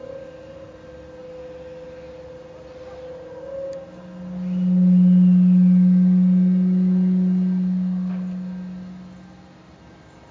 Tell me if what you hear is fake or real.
real